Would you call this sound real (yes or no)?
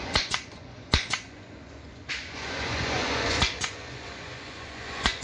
no